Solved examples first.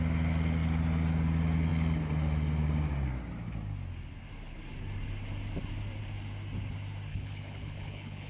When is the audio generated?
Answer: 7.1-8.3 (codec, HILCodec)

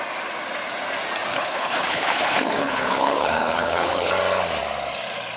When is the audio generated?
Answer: 1.3-4.1 (codec, HILCodec)

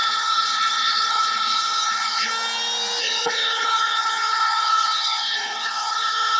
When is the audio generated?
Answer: 0.0-2.3 (codec, HILCodec); 3.0-6.4